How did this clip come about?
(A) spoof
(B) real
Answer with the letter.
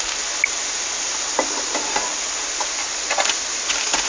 B